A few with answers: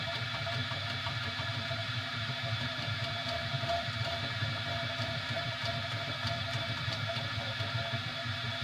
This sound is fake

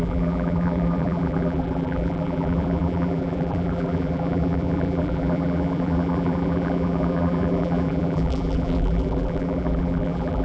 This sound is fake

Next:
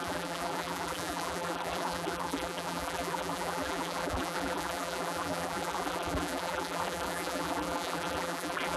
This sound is fake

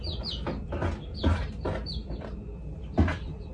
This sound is real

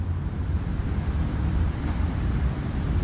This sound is fake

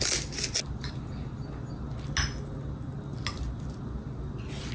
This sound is real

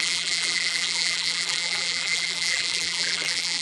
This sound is fake